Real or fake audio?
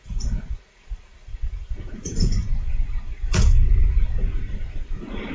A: fake